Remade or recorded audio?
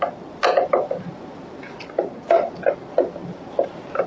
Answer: recorded